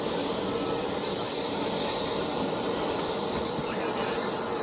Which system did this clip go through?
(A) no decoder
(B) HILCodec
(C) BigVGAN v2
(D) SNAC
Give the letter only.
A